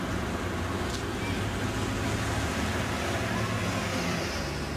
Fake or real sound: real